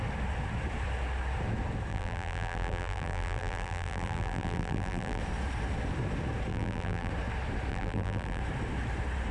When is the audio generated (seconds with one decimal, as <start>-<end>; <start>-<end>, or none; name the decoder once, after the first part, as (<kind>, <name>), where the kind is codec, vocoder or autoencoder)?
1.9-5.2 (vocoder, BigVGAN v2); 6.5-7.1; 7.7-8.4